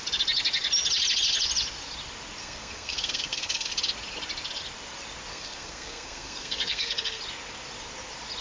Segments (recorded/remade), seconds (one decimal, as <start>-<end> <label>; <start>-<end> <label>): 0.0-2.4 recorded; 2.4-3.7 remade; 3.7-5.3 recorded; 5.3-7.2 remade; 7.2-8.4 recorded